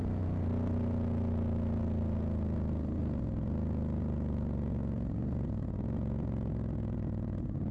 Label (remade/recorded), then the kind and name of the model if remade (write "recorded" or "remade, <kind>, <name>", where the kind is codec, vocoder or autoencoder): recorded